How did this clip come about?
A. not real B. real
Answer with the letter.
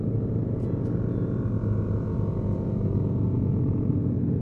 B